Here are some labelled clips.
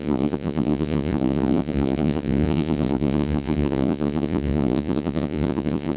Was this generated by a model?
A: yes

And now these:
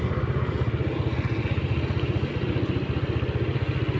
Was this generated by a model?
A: no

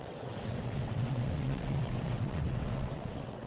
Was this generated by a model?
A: yes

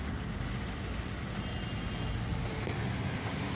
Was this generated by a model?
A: no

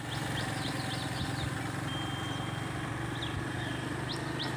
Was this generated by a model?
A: no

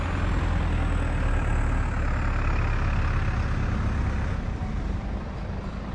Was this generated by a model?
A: no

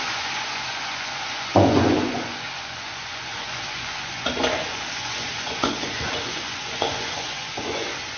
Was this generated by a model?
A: yes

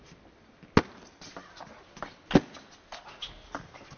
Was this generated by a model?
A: no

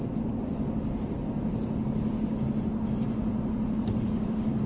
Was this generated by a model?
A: no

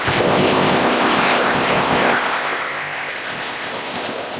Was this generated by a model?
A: yes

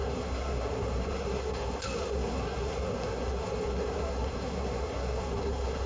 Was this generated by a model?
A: yes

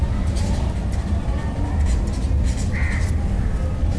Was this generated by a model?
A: no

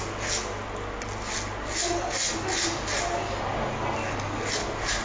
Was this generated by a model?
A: no